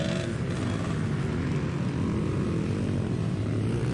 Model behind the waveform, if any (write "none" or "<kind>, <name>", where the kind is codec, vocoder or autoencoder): none